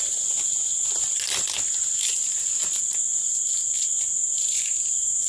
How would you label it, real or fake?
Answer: real